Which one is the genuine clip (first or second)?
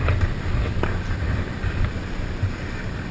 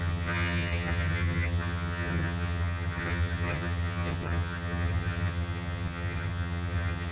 first